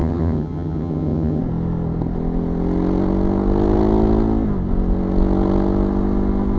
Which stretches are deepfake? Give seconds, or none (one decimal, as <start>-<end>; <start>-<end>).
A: 0.0-1.4